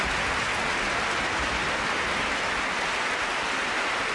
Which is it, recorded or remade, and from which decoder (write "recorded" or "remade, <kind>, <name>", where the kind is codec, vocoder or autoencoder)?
recorded